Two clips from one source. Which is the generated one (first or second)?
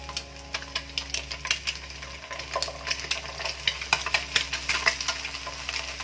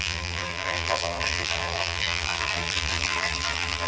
second